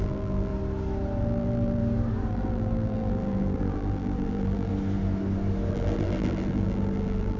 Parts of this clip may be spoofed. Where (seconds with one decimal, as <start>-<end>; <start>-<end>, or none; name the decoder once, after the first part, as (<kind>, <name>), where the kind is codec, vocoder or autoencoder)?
0.0-0.5 (vocoder, BigVGAN v2); 1.2-1.8; 2.3-4.7; 5.7-7.4